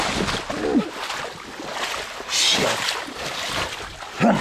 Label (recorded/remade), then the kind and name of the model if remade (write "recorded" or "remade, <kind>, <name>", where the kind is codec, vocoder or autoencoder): recorded